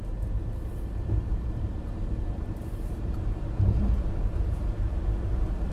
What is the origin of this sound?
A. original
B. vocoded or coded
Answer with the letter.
B